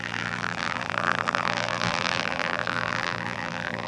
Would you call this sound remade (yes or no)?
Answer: yes